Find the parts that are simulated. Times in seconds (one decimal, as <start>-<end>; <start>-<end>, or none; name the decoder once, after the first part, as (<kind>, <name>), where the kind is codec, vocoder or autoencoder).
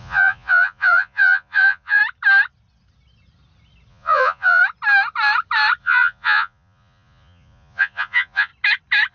0.0-2.0 (vocoder, Vocos); 3.9-4.6; 5.8-8.5